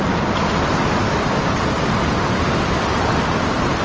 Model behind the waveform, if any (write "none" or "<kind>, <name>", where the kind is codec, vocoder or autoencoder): none